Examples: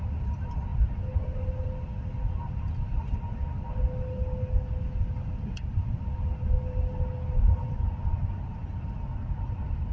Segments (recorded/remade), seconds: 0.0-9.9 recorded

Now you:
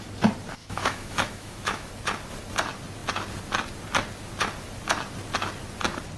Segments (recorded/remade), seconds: 0.0-0.6 recorded; 0.6-1.9 remade; 1.9-6.2 recorded

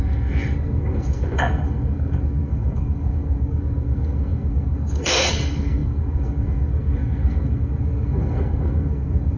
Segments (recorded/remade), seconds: 0.0-9.4 remade

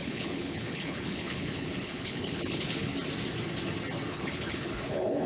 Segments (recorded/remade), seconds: 0.0-2.9 remade; 2.9-4.1 recorded; 4.1-5.3 remade

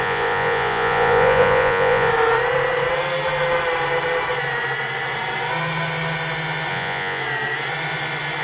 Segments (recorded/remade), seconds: 0.0-2.1 remade; 2.1-6.7 recorded; 6.7-7.2 remade; 7.2-8.4 recorded

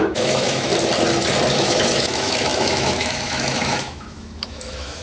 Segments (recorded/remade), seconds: 0.0-0.7 remade; 0.7-1.5 recorded; 1.5-5.0 remade

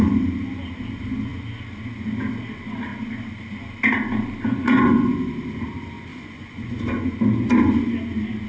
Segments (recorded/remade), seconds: 0.0-4.5 recorded; 4.5-5.3 remade; 5.3-6.1 recorded; 6.1-7.1 remade; 7.1-8.5 recorded

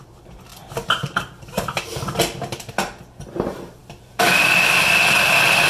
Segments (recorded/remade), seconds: 0.0-5.7 remade